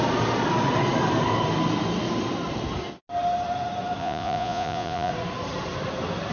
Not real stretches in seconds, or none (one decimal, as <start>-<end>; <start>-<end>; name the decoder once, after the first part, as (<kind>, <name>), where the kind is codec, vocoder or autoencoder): 4.0-5.1 (vocoder, Vocos)

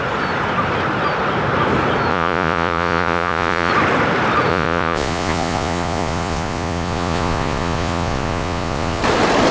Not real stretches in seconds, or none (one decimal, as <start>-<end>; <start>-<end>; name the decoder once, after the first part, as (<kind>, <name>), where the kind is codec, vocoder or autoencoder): 2.1-3.7 (vocoder, Vocos); 4.5-9.0

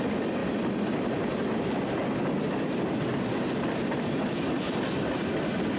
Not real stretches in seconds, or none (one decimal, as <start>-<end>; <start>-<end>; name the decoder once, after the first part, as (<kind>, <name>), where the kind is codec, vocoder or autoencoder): 0.4-1.8 (vocoder, BigVGAN v2); 3.8-4.3

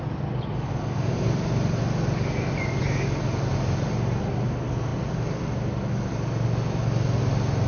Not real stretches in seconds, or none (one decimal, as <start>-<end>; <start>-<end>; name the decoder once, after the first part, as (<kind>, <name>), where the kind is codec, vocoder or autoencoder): none

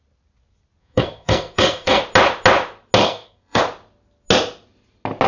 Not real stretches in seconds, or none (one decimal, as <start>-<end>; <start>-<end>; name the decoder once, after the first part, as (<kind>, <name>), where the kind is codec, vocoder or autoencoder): 0.8-2.0 (codec, SNAC); 3.0-3.6

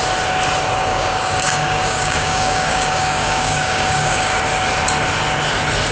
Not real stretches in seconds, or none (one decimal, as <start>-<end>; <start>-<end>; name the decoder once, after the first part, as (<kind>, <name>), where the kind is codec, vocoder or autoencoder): 0.9-4.4 (codec, DAC)

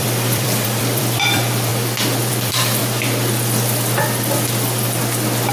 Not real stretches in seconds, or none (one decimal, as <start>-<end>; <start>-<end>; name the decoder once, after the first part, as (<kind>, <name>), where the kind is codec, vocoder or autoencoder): 0.0-1.7 (vocoder, BigVGAN v2); 2.3-2.8

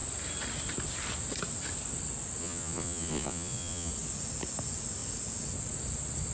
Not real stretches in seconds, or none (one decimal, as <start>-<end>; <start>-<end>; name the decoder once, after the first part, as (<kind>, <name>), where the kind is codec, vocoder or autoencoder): 2.4-3.9 (vocoder, Vocos)